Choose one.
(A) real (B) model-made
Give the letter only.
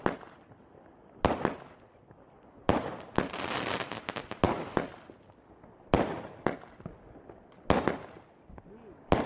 A